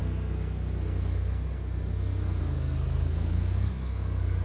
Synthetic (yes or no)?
yes